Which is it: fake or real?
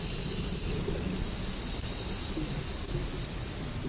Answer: real